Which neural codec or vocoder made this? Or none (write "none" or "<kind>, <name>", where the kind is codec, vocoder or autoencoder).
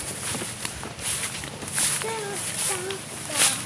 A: none